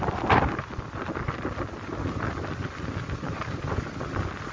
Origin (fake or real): real